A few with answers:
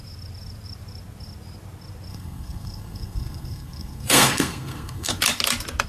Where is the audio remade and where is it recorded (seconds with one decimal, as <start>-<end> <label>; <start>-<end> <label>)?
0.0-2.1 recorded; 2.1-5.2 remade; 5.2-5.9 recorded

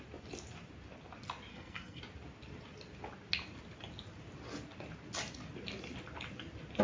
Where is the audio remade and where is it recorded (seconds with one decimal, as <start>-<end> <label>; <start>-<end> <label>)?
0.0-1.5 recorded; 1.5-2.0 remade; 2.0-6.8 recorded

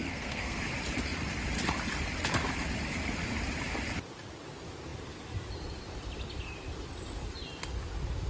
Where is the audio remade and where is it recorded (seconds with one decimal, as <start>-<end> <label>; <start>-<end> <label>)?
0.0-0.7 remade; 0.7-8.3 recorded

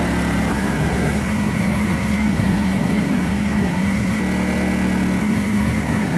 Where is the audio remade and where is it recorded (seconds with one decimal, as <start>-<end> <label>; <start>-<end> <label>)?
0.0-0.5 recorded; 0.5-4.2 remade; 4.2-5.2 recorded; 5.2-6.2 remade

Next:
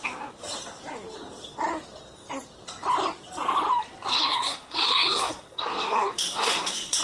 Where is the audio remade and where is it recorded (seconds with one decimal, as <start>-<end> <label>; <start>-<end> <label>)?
0.0-4.1 recorded; 4.1-7.0 remade